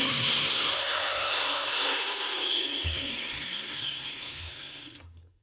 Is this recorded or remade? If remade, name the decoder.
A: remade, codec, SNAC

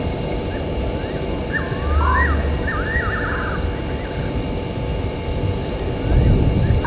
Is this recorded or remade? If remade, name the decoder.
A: recorded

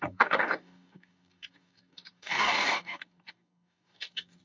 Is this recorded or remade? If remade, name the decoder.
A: remade, codec, DAC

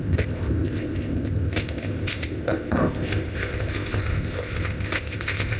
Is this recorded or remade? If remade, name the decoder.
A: remade, codec, ZipCodec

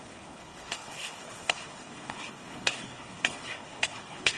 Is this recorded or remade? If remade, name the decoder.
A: remade, codec, HILCodec